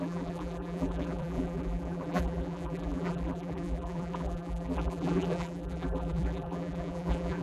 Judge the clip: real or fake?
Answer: fake